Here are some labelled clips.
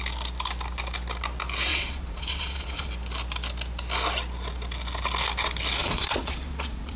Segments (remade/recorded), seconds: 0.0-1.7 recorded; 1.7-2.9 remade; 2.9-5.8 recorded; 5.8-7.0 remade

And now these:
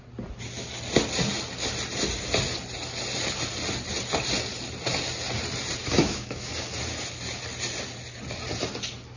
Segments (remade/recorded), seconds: 0.0-5.9 recorded; 5.9-6.5 remade; 6.5-9.2 recorded

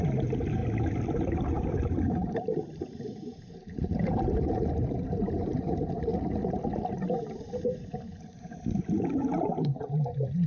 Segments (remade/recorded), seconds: 0.0-0.6 remade; 0.6-1.1 recorded; 1.1-6.1 remade; 6.1-7.5 recorded; 7.5-10.5 remade

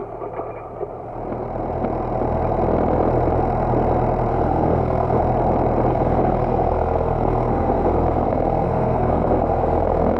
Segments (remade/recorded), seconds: 0.0-4.3 recorded; 4.3-5.2 remade; 5.2-5.9 recorded; 5.9-10.2 remade

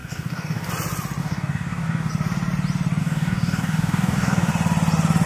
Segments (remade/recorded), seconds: 0.0-0.7 remade; 0.7-1.2 recorded; 1.2-2.1 remade; 2.1-3.0 recorded; 3.0-4.5 remade; 4.5-5.3 recorded

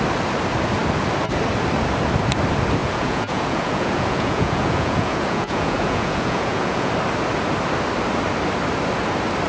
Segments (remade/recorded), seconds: 0.0-2.8 recorded; 2.8-6.9 remade; 6.9-9.5 recorded

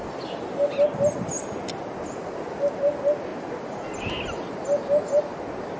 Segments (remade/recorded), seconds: 0.0-5.8 recorded

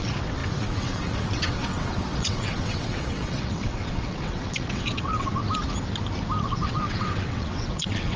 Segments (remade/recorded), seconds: 0.0-5.4 remade; 5.4-6.4 recorded; 6.4-8.2 remade